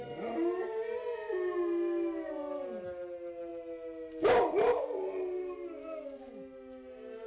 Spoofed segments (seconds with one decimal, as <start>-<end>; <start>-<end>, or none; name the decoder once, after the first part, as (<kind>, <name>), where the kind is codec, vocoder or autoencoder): none